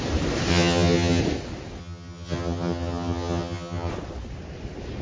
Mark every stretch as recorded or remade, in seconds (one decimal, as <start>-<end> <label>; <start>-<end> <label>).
0.0-0.5 recorded; 0.5-1.2 remade; 1.2-1.8 recorded; 1.8-3.9 remade; 3.9-5.0 recorded